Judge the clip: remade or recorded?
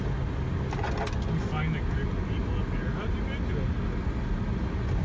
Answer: recorded